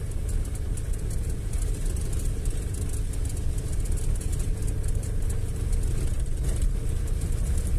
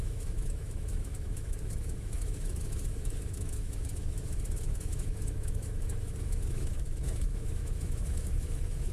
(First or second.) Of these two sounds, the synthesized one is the second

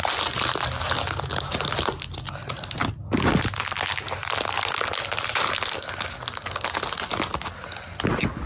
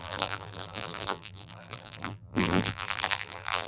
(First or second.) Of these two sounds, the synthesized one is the second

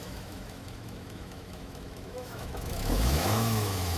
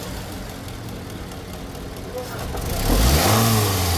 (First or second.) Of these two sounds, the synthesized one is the first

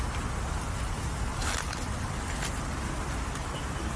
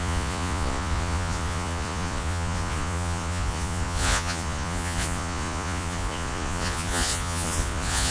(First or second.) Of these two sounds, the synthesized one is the second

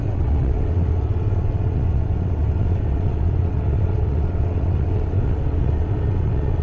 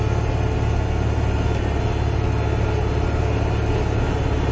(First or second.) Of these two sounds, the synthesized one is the first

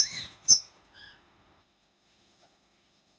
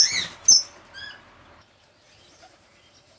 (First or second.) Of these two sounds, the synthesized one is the first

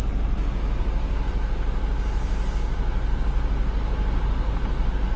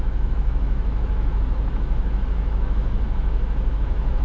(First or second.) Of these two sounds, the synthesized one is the second